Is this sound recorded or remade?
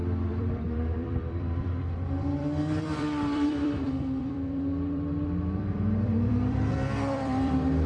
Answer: remade